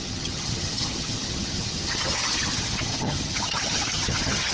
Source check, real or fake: fake